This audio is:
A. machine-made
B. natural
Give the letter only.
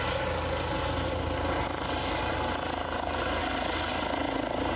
B